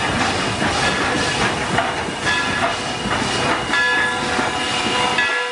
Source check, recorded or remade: recorded